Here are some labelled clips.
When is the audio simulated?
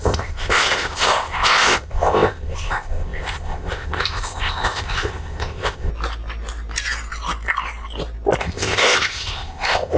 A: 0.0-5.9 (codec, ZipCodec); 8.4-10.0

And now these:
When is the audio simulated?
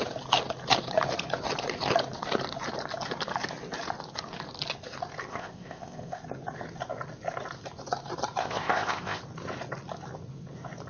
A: 5.3-6.2 (codec, ZipCodec); 8.4-9.2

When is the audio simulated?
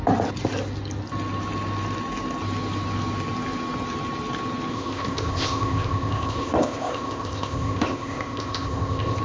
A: 4.7-9.2 (codec, ZipCodec)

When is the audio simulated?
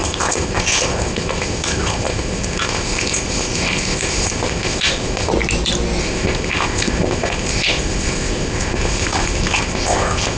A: 0.0-5.3 (codec, ZipCodec); 6.0-10.4